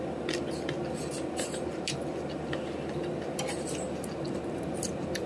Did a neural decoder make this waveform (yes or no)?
no